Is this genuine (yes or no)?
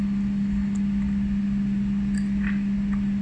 yes